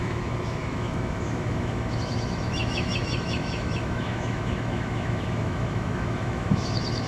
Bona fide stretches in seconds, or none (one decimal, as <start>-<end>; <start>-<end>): none